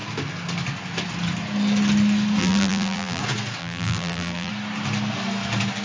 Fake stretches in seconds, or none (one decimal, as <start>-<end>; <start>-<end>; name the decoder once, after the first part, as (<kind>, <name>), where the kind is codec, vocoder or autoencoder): 2.4-3.2 (vocoder, BigVGAN v2); 3.6-4.5